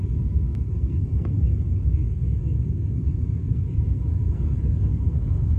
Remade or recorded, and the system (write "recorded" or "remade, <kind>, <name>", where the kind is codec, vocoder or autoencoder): remade, codec, SNAC